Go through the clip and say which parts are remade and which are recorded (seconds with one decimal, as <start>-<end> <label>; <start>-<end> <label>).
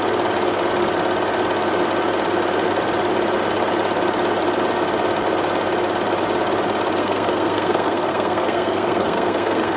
0.0-7.0 recorded; 7.0-9.8 remade